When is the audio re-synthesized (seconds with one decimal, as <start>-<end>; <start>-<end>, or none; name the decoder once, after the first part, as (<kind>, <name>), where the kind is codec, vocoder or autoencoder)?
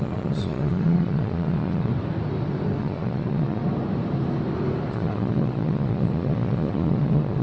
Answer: 0.0-1.9 (vocoder, Vocos); 2.8-3.6; 4.9-7.4